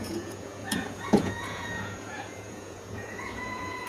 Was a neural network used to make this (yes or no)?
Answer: yes